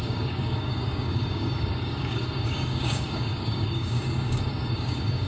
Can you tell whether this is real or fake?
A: fake